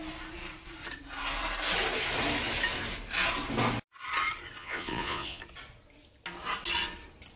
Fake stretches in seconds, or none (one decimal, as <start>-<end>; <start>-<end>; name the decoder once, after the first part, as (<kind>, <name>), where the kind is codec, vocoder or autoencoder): 4.6-5.4 (vocoder, Vocos)